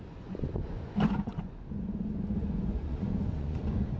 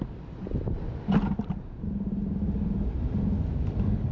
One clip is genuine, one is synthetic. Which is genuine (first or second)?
second